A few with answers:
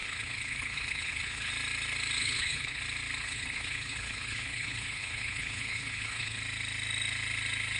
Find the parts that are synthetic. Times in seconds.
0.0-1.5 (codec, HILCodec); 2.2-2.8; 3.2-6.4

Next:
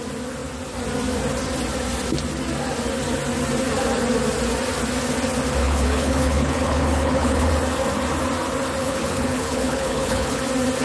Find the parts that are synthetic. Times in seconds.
5.6-7.5 (codec, HILCodec); 8.8-10.4

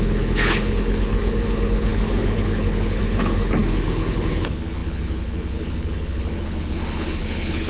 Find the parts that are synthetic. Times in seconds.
0.0-7.7 (codec, HILCodec)

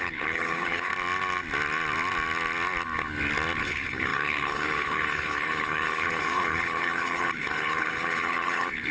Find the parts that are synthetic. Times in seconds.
0.0-0.9 (codec, HILCodec); 3.6-8.9

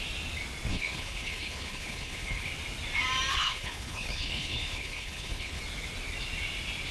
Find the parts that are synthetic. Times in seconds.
0.7-2.5 (codec, HILCodec); 3.3-5.6